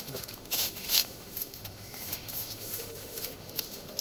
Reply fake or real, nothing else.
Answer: fake